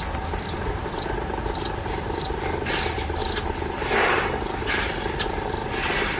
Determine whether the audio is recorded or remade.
recorded